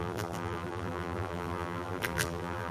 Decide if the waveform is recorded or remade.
remade